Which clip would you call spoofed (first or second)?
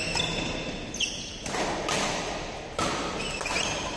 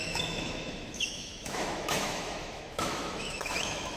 second